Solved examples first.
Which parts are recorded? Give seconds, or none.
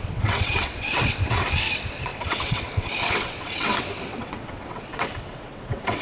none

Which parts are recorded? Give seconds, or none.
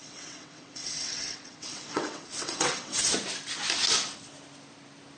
3.1-5.2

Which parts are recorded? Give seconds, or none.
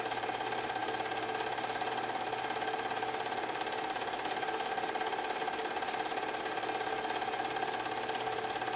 0.0-8.8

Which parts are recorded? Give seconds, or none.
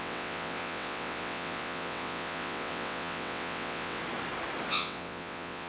4.0-4.7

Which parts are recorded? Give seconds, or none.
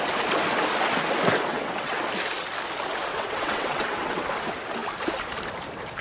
0.0-1.5; 2.0-3.1; 4.2-6.0